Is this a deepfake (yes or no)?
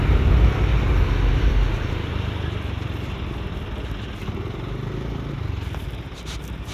no